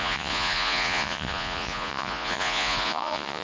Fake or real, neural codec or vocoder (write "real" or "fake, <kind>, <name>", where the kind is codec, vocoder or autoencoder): fake, vocoder, Vocos